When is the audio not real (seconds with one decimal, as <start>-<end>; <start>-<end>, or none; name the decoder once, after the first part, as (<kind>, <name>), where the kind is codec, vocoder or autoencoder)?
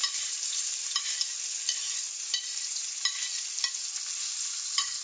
0.0-0.7 (vocoder, BigVGAN v2); 2.1-2.8; 4.6-5.0